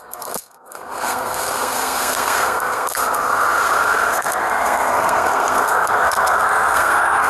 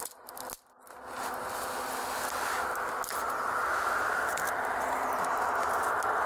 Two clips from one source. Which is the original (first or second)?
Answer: second